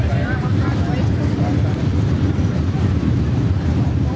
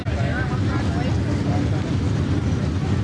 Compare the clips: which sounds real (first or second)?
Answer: second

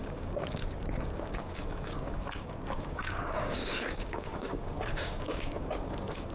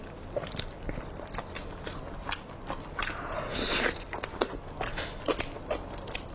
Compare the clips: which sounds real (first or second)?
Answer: second